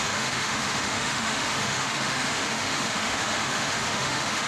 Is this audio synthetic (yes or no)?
yes